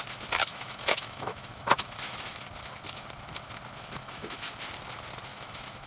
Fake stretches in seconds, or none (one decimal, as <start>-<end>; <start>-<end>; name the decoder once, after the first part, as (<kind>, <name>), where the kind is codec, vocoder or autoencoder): 0.5-2.5 (autoencoder, DAC-VAE); 4.0-4.5; 5.3-5.9